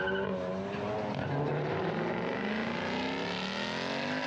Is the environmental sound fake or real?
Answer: real